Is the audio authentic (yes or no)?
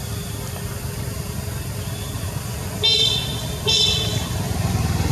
yes